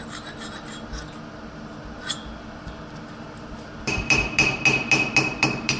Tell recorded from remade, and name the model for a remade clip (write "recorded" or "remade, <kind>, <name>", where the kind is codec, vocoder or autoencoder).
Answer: recorded